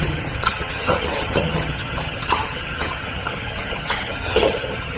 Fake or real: fake